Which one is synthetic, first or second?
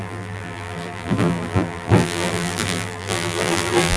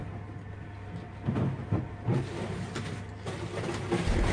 first